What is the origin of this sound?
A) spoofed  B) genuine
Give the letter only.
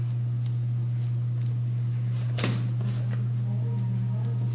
B